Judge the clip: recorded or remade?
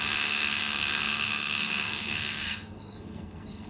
remade